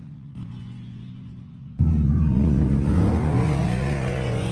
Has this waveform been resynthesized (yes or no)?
yes